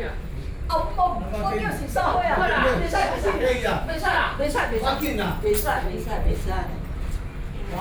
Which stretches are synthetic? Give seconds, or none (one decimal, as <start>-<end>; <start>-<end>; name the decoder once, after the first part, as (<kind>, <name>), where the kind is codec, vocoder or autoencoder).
3.0-4.2 (autoencoder, DAC-VAE)